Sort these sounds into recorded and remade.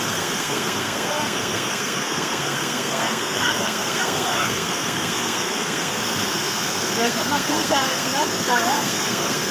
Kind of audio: remade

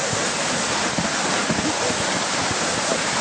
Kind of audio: recorded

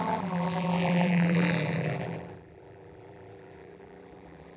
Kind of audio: remade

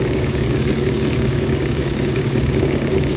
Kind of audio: remade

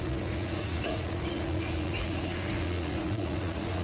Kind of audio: remade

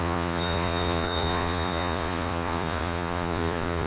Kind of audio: remade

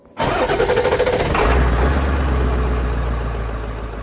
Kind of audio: recorded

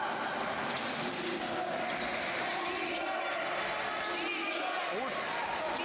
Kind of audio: recorded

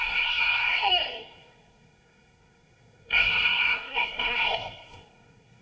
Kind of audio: remade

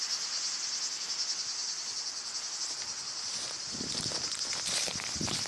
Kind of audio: recorded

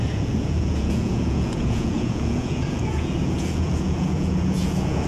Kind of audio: remade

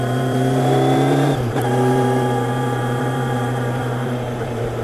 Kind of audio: remade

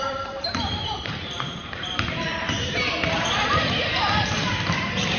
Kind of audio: remade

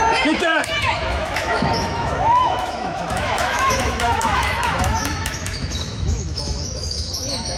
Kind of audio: remade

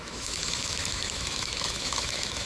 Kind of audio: remade